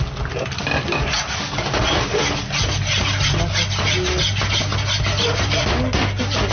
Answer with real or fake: real